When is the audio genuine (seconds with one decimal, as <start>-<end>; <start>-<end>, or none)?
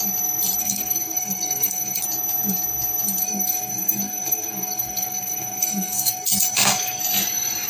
0.0-0.6; 2.0-3.2; 7.0-7.7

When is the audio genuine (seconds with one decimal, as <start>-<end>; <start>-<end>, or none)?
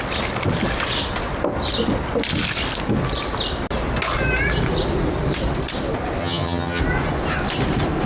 0.0-6.2; 6.8-8.1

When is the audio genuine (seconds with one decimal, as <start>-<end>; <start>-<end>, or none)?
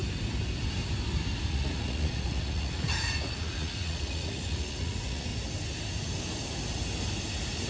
0.0-1.5; 5.3-7.7